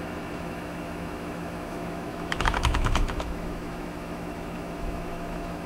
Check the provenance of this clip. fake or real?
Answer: fake